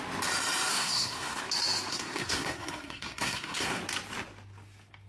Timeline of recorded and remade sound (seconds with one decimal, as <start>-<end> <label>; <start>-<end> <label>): 0.0-0.7 recorded; 0.7-1.4 remade; 1.4-1.9 recorded; 1.9-3.8 remade; 3.8-5.1 recorded